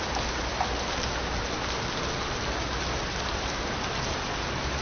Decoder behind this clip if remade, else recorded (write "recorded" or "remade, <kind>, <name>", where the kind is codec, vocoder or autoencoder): recorded